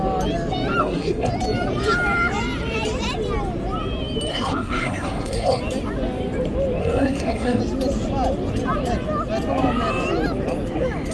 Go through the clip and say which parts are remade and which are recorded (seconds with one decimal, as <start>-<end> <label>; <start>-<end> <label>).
0.0-0.8 recorded; 0.8-1.3 remade; 1.3-4.3 recorded; 4.3-5.6 remade; 5.6-6.8 recorded; 6.8-7.6 remade; 7.6-11.1 recorded